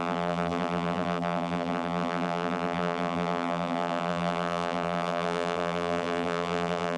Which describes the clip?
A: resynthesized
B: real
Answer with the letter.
A